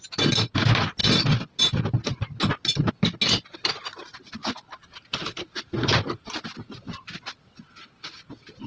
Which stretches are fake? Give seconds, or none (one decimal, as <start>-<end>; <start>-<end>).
4.4-5.6